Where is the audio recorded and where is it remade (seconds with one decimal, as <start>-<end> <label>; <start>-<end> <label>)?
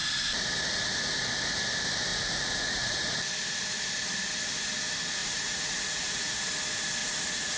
0.0-2.1 recorded; 2.1-3.1 remade; 3.1-5.2 recorded; 5.2-6.4 remade; 6.4-7.0 recorded; 7.0-7.6 remade